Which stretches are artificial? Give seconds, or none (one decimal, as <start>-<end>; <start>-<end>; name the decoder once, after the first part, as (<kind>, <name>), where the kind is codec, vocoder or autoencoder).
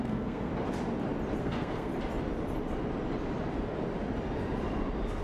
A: 0.0-0.5 (codec, SNAC); 1.4-1.9